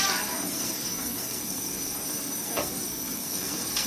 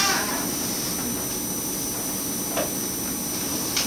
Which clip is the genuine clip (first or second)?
second